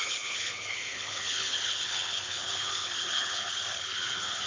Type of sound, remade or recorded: remade